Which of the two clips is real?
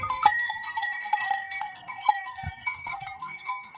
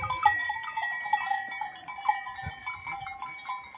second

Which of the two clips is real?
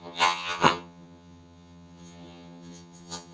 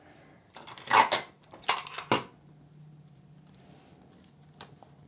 second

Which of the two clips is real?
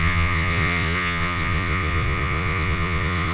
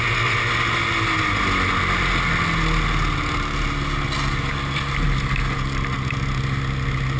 second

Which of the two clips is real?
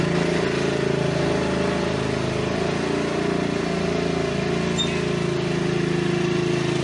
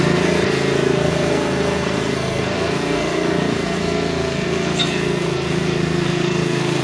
first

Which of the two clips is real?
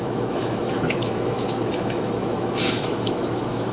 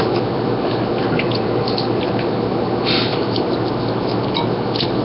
second